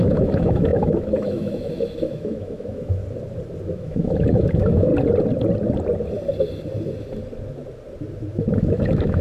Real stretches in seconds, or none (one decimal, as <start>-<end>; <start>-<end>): 3.0-3.7; 4.9-8.3